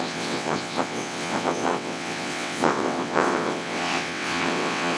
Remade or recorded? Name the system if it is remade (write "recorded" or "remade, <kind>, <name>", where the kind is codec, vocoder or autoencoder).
remade, vocoder, WaveNeXt